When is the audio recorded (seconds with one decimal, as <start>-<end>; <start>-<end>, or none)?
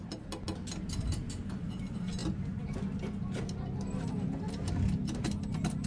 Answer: 0.0-5.9